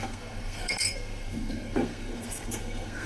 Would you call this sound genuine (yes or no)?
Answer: no